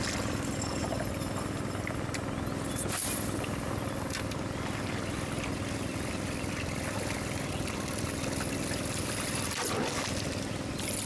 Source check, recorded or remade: recorded